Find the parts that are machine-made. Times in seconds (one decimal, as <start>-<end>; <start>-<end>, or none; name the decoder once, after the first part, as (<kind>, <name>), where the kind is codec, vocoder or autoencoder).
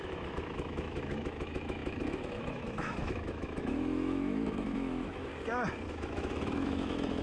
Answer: 0.0-5.3 (autoencoder, DAC-VAE); 5.9-7.2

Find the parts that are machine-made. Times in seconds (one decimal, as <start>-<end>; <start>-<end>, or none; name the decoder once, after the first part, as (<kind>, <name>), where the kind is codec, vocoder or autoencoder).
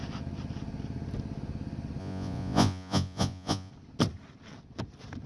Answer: 2.0-3.7 (vocoder, Vocos)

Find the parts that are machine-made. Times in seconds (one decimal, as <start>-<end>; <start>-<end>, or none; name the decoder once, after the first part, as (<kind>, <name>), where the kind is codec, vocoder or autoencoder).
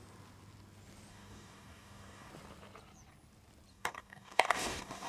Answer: 1.1-2.3 (codec, DAC); 3.7-5.1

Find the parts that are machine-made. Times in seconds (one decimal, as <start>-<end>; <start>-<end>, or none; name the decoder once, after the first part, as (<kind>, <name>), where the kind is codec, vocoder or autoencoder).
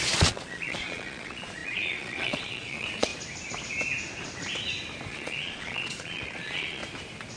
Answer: 0.0-3.1 (vocoder, Vocos); 5.1-6.8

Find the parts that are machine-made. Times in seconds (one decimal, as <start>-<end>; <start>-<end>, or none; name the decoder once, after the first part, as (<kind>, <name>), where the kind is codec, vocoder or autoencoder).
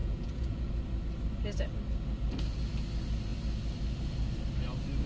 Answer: 0.0-0.7 (vocoder, Vocos)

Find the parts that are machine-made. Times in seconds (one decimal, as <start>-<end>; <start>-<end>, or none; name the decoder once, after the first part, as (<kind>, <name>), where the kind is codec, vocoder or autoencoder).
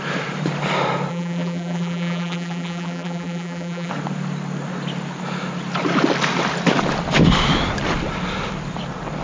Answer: 1.1-3.9 (vocoder, BigVGAN v2)